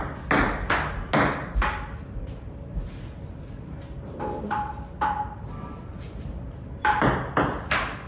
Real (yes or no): yes